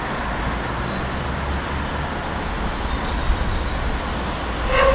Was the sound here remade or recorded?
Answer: recorded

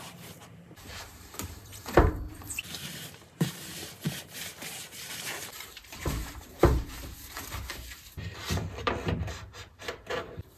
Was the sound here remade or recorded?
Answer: remade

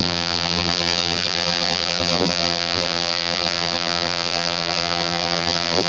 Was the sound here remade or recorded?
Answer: remade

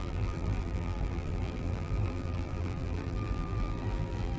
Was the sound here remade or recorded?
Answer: remade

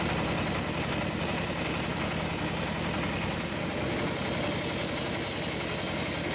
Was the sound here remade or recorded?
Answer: recorded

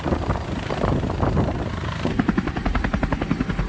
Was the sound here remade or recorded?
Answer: remade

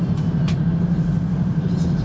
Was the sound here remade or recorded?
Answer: remade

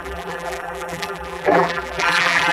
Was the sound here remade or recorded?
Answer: remade